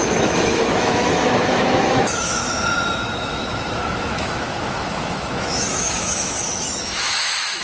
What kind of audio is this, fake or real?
fake